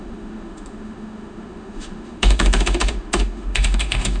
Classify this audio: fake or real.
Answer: fake